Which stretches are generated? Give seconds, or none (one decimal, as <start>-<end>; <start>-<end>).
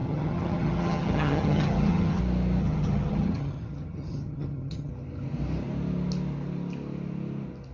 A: 0.0-2.2; 2.6-4.9